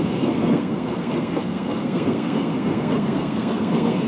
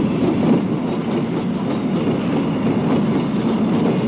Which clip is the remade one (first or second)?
first